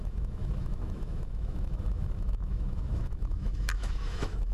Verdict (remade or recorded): remade